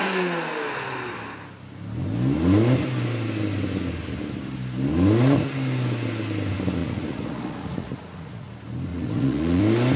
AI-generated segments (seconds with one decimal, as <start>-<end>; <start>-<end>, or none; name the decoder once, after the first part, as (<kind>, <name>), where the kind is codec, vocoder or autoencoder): 6.8-8.5 (vocoder, Vocos); 8.9-9.6